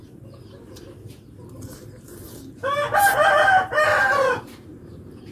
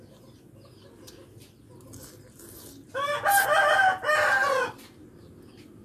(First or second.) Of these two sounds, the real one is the second